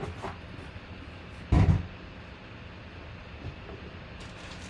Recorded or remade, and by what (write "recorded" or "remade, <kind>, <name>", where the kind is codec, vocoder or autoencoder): recorded